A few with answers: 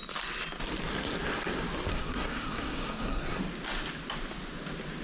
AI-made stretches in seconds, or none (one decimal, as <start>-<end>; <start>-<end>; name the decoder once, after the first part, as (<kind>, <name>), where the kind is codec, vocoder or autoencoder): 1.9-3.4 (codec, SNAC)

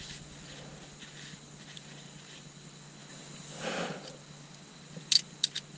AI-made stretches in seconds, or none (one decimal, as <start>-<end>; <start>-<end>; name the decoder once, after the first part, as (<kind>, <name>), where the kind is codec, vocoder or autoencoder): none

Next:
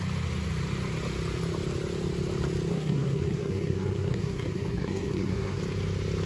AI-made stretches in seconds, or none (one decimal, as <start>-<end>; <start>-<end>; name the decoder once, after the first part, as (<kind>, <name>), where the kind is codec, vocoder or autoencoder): 2.7-5.6 (codec, SNAC)

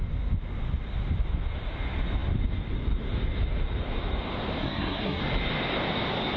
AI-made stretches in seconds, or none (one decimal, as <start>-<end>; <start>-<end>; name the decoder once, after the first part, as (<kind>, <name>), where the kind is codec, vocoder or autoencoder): 4.6-5.2 (codec, SNAC)

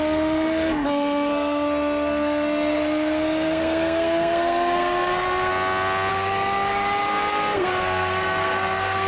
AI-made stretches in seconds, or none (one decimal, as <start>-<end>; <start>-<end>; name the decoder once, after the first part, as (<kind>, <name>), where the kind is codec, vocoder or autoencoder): 0.0-5.5 (codec, SNAC); 6.1-9.1

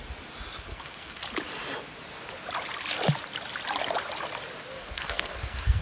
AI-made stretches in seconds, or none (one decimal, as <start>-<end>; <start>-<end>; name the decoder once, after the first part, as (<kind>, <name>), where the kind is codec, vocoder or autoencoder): 0.6-1.2 (codec, SNAC); 4.7-5.8

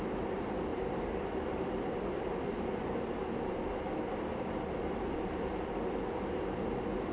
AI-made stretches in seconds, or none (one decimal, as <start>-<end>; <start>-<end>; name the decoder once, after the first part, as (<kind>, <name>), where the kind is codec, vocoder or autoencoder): none

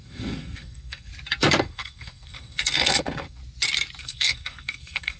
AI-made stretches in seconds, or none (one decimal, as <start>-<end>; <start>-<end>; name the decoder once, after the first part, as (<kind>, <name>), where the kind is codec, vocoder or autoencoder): 0.0-1.1 (codec, SNAC); 1.6-3.4; 4.0-5.2